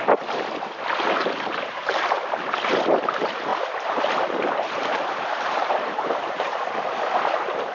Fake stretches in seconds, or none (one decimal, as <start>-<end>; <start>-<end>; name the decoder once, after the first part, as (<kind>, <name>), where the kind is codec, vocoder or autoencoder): 3.5-4.0 (vocoder, BigVGAN v2); 4.4-6.6